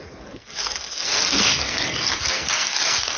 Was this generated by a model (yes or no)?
yes